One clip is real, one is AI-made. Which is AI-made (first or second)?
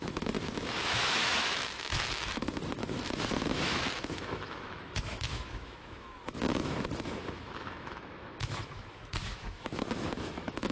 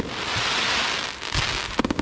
first